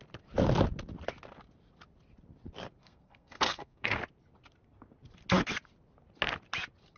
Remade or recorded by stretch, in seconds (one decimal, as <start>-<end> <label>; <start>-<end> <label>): 0.0-2.8 recorded; 2.8-4.0 remade; 4.0-7.0 recorded